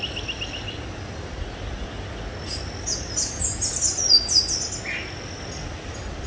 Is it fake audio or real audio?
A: real